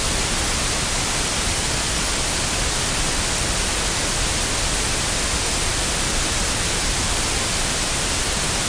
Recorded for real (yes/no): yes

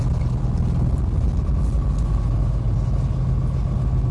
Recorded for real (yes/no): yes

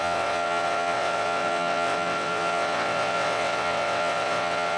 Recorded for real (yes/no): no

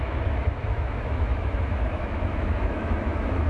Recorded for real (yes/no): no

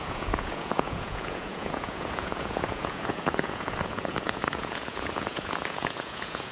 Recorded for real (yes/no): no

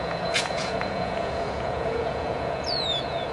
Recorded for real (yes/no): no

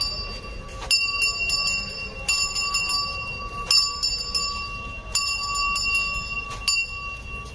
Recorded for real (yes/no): yes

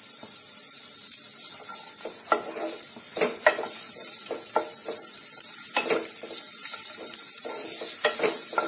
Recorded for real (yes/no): yes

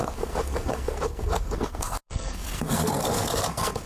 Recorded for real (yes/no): no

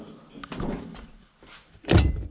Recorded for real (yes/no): yes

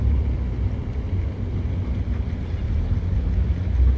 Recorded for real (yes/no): yes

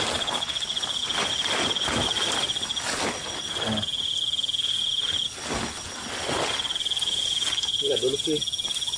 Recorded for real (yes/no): yes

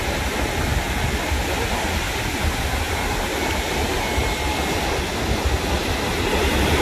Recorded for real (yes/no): yes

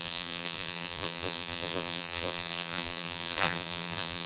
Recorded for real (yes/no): no